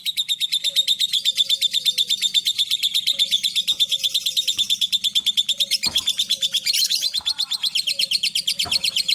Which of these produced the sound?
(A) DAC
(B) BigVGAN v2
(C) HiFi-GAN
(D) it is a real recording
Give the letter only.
B